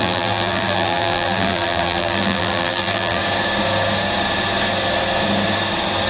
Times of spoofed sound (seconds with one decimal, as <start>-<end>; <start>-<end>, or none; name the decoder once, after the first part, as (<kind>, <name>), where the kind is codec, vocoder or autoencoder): 0.0-3.2 (vocoder, BigVGAN v2)